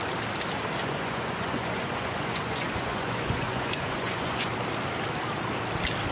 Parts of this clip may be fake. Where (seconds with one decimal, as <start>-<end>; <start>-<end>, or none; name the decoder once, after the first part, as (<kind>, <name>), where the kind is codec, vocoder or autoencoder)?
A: 0.8-4.5 (vocoder, Vocos)